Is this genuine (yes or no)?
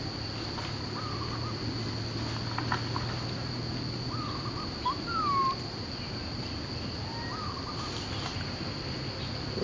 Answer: yes